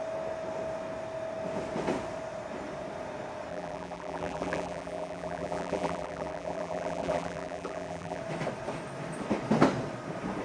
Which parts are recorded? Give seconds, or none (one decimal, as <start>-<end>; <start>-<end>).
0.0-3.5; 8.2-10.4